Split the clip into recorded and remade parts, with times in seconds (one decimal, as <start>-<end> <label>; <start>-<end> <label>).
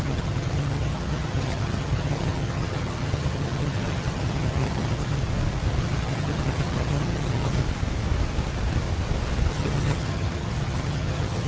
0.0-5.2 remade; 5.2-5.8 recorded; 5.8-7.6 remade; 7.6-9.5 recorded; 9.5-11.5 remade